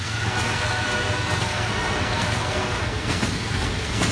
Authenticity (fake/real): fake